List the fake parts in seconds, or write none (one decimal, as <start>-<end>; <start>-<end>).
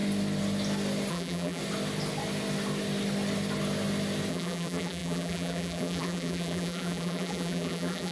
1.1-1.6; 4.3-8.1